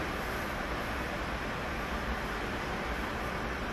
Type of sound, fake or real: fake